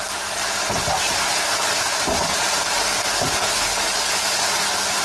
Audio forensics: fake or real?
real